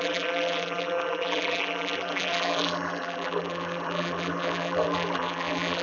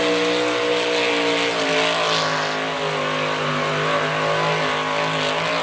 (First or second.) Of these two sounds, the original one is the second